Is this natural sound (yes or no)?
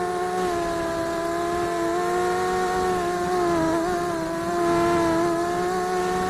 yes